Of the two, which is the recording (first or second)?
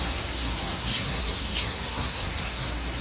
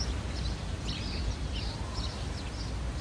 second